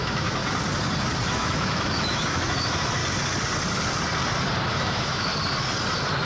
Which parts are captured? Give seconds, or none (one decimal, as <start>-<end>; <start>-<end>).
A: 0.4-1.3; 3.0-4.7; 5.3-6.3